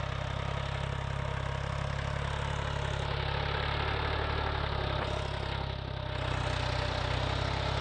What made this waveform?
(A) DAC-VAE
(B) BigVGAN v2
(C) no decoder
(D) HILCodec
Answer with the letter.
C